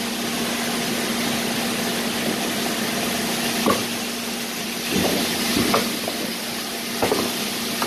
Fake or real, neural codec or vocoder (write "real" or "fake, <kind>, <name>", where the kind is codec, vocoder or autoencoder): real